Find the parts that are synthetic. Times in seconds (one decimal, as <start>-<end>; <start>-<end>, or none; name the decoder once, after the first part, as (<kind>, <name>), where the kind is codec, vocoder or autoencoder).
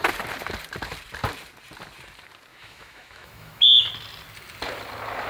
2.5-3.9 (autoencoder, DAC-VAE)